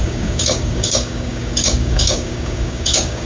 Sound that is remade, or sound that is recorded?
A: remade